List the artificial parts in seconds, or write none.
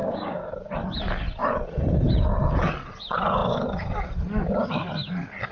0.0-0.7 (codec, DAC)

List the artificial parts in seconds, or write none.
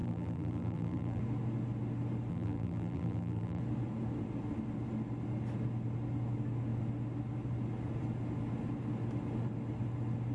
0.0-1.2 (vocoder, BigVGAN v2); 2.3-3.6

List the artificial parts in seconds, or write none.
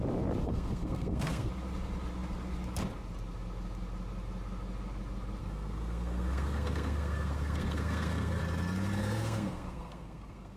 0.4-1.5 (codec, SNAC); 5.4-8.4; 9.0-10.6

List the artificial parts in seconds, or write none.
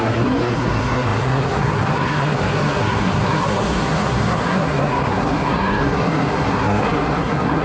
0.0-7.6 (codec, SNAC)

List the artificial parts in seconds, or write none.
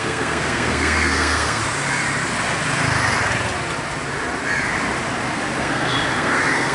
0.0-1.6 (codec, SNAC); 5.6-6.7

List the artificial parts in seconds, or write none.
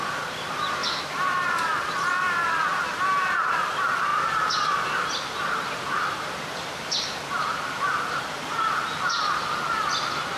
none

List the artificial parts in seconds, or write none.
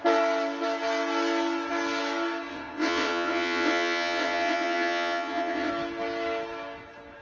2.5-5.7 (vocoder, WaveNeXt)